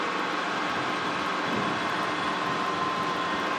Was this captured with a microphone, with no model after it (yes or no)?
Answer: yes